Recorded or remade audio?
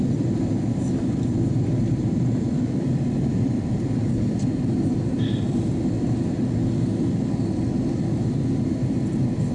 remade